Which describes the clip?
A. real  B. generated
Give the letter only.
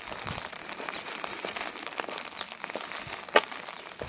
B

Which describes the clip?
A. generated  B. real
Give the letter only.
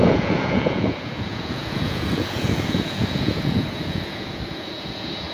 A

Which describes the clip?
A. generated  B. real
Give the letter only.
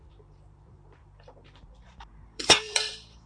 A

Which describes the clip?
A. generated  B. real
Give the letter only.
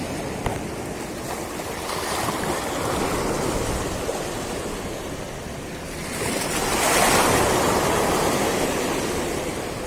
B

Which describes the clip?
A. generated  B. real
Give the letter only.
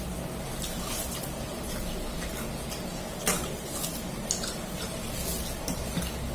B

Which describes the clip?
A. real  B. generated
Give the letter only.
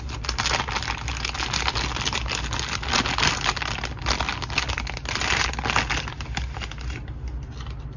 A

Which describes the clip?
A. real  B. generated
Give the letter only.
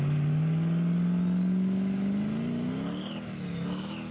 A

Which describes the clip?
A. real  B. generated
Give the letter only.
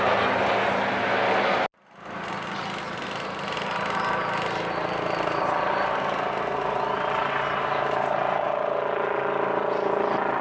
A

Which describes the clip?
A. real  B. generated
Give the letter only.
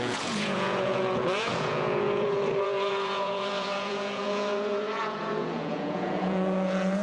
B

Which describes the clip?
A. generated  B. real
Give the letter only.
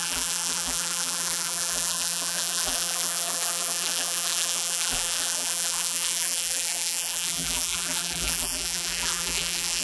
A